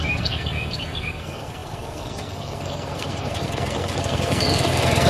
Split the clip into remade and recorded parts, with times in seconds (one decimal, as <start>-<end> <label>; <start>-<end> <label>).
0.0-5.1 remade